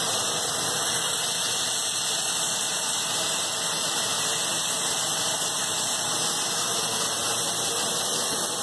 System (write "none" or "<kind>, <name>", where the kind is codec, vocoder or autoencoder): none